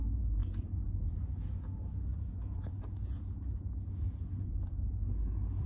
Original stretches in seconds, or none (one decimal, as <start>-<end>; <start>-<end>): none